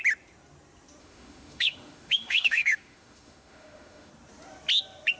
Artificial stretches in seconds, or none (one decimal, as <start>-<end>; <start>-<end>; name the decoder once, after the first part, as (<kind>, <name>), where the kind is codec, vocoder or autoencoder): 1.0-4.1 (autoencoder, DAC-VAE)